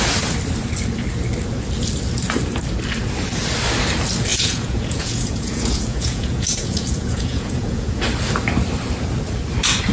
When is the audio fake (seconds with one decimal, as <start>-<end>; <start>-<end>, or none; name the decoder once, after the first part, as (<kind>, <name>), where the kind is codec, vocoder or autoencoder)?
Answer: 4.3-8.0 (vocoder, Vocos)